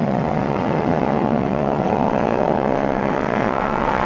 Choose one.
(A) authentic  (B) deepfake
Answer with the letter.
B